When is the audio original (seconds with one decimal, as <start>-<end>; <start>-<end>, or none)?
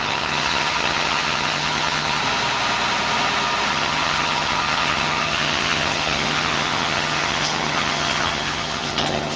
2.2-3.7